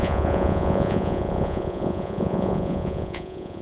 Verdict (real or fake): fake